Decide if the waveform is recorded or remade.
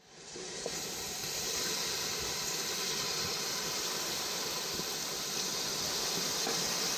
recorded